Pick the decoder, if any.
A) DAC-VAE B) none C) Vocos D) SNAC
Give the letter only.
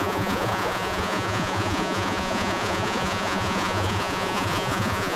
C